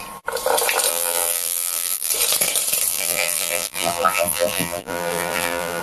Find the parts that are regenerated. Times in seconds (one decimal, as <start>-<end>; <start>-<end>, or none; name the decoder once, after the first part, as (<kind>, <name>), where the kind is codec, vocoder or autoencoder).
0.9-2.1 (vocoder, BigVGAN v2); 2.9-5.8